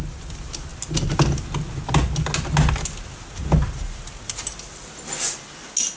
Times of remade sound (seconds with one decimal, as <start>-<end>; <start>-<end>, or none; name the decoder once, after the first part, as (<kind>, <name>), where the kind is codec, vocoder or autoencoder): none